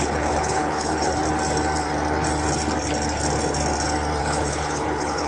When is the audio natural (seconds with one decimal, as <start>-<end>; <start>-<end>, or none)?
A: 1.1-4.2